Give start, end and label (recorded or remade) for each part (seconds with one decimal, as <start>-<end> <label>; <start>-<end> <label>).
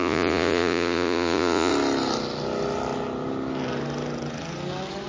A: 0.0-1.7 remade; 1.7-5.1 recorded